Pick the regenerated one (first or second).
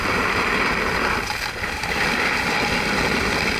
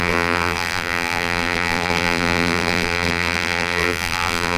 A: second